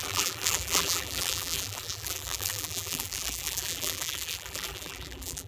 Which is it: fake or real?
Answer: fake